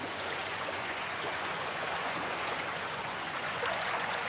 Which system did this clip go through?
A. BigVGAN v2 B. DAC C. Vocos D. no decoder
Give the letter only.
C